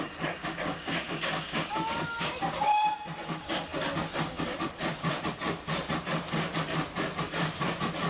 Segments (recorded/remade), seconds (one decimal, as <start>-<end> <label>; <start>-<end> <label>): 0.0-0.4 recorded; 0.4-2.6 remade; 2.6-8.1 recorded